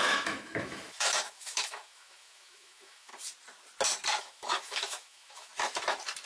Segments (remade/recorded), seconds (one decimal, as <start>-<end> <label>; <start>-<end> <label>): 0.0-3.1 remade; 3.1-4.2 recorded; 4.2-5.5 remade; 5.5-6.3 recorded